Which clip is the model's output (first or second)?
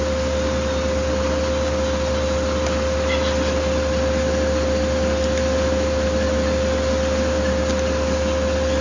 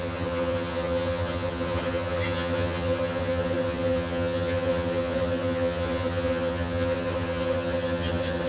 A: second